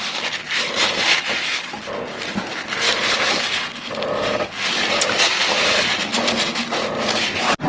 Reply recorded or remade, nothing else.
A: recorded